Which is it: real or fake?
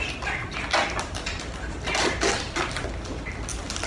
real